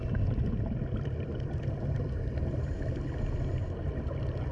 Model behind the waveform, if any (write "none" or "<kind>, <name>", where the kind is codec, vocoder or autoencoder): none